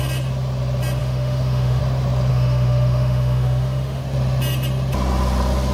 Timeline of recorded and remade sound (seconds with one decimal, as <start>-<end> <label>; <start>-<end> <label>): 0.0-1.0 recorded; 1.0-1.8 remade; 1.8-2.3 recorded; 2.3-4.0 remade; 4.0-5.7 recorded